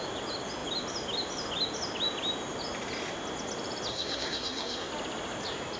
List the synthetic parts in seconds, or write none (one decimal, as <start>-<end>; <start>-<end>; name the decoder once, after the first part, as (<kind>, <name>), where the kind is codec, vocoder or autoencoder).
3.9-4.9 (codec, SNAC)